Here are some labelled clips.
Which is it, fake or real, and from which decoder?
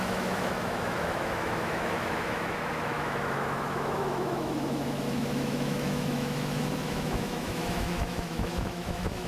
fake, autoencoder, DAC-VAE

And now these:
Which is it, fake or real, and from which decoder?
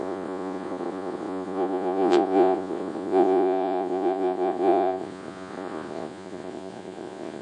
fake, vocoder, Vocos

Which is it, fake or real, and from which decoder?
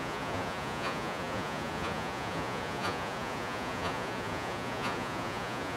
fake, vocoder, Vocos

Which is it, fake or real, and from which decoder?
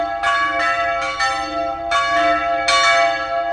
real